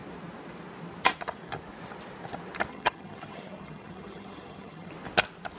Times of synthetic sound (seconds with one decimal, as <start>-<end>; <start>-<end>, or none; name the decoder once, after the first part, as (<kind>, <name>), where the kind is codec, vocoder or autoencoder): 2.7-4.9 (vocoder, HiFi-GAN)